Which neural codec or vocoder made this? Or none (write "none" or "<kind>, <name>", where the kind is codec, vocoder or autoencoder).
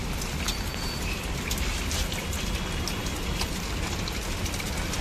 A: none